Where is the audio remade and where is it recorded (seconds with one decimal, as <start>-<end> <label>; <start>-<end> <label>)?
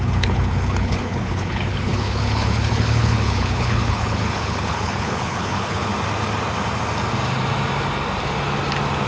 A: 0.0-5.9 remade; 5.9-9.1 recorded